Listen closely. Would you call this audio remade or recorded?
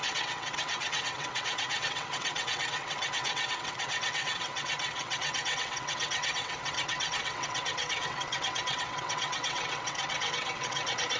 remade